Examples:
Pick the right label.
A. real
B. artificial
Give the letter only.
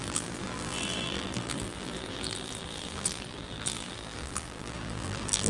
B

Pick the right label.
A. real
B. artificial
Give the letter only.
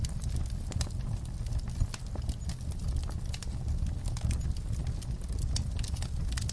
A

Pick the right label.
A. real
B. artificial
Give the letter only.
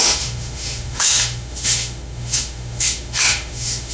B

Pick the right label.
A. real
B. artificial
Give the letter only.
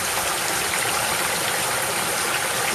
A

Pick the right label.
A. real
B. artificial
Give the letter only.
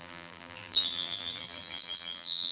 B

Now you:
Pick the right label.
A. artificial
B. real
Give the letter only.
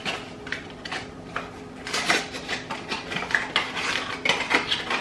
B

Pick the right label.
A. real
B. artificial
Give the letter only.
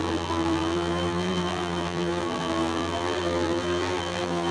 B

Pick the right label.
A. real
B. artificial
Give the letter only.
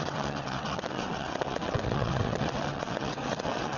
B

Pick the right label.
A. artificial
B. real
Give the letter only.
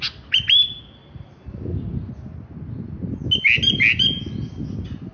B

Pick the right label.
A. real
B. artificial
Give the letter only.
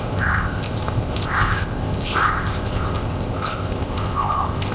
B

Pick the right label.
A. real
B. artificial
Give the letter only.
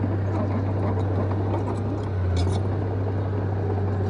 A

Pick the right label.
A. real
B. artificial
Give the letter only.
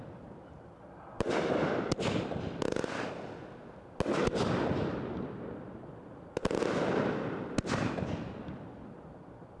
A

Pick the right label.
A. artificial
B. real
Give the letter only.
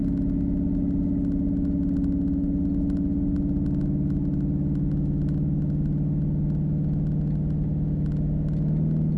B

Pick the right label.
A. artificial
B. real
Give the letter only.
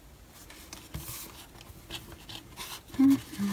B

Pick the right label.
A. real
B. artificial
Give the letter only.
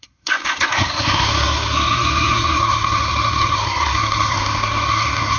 B